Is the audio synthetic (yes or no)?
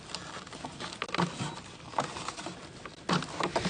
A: no